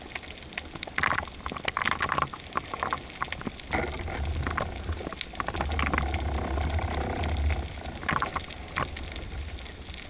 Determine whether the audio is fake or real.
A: real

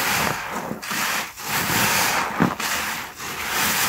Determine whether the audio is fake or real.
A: fake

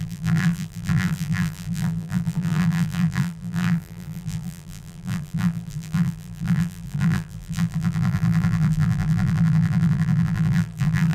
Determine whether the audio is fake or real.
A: fake